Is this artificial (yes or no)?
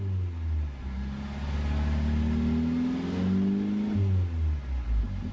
no